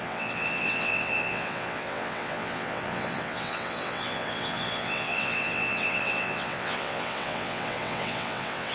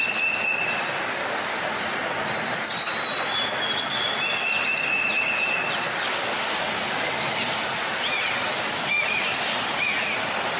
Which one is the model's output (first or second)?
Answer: first